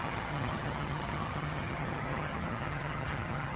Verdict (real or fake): fake